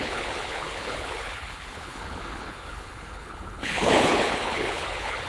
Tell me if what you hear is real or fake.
fake